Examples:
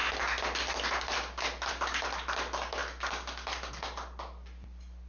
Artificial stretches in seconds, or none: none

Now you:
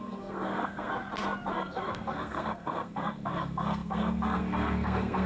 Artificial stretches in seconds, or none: 0.0-0.9 (codec, SNAC); 1.5-5.3